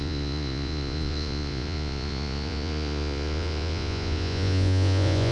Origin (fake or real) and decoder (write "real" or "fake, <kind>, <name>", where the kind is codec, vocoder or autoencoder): fake, vocoder, Vocos